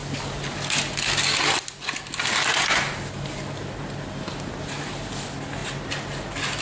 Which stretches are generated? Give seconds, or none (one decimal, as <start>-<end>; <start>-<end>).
none